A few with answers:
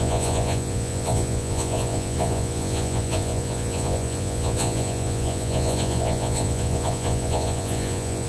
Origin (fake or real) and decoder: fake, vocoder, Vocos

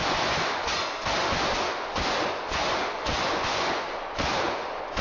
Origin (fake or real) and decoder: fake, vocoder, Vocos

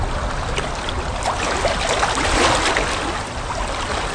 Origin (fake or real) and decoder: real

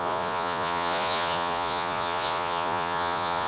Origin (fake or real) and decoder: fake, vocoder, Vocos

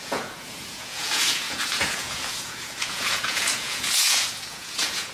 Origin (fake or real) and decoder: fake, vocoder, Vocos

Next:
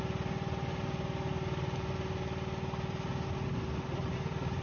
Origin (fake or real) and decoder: real